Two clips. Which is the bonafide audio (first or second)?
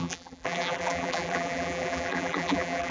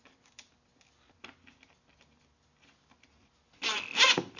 second